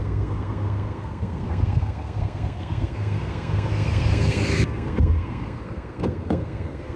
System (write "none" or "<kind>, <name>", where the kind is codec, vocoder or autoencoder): codec, SNAC